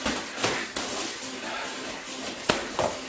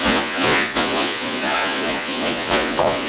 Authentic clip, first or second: first